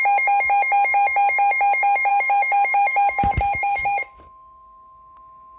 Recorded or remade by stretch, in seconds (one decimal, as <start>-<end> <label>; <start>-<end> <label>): 0.0-2.1 recorded; 2.1-4.1 remade; 4.1-5.6 recorded